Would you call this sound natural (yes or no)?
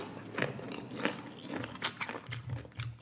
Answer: yes